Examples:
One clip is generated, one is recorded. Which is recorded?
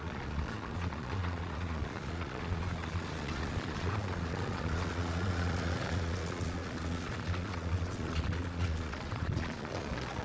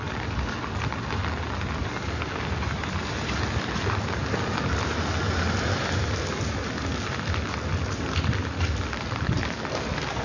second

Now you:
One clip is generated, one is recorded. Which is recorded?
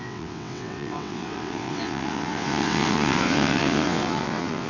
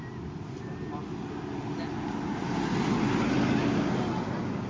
second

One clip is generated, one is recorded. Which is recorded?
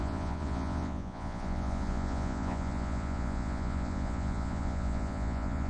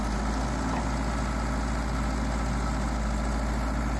second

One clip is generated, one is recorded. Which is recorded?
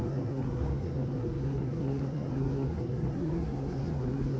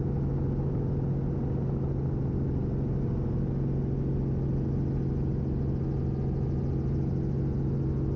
second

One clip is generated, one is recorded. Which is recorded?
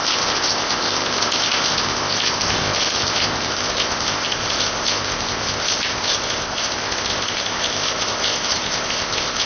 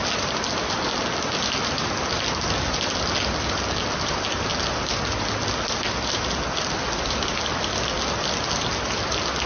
second